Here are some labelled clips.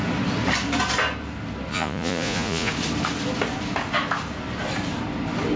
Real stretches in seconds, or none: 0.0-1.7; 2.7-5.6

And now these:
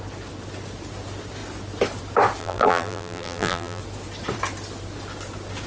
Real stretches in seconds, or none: 0.0-2.4; 3.8-5.7

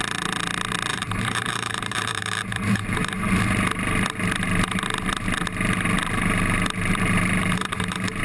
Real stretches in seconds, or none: 0.0-0.9; 3.4-7.4

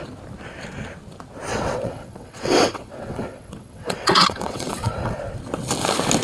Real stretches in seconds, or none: 0.0-1.5; 5.2-6.2

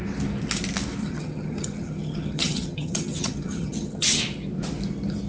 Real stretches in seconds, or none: 0.0-1.0; 4.2-5.3